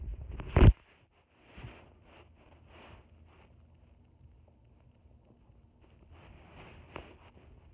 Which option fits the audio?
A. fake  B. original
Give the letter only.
B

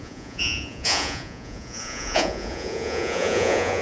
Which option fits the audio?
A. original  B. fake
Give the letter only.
B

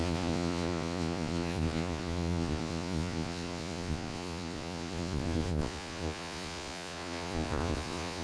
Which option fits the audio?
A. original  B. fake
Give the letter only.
B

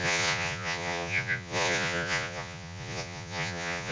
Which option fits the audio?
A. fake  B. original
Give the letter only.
A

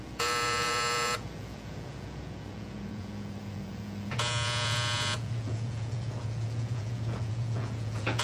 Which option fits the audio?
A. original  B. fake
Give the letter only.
B